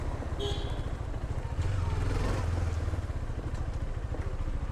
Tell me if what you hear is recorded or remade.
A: recorded